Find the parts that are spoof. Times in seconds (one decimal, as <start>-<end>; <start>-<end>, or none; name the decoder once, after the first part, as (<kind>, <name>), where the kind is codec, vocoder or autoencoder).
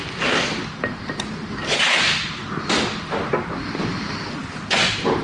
none